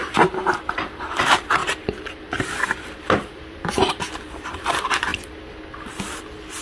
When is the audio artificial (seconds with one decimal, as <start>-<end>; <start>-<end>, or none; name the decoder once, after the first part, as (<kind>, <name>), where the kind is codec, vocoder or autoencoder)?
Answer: 0.0-1.6 (vocoder, BigVGAN v2); 3.0-5.1